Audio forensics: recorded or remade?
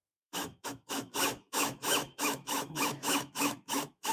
remade